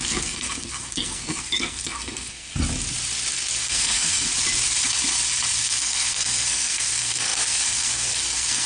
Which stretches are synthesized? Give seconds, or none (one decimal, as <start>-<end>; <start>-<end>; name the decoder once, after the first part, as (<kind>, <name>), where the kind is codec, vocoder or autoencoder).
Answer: 0.0-2.5 (codec, SNAC); 3.6-4.3; 5.6-8.7